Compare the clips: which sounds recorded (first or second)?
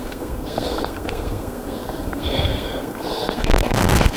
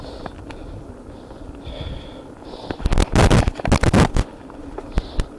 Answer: second